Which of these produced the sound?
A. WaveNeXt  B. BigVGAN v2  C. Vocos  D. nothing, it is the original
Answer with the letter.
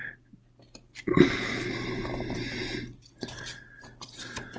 D